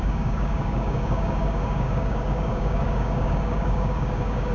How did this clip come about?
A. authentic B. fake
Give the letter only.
B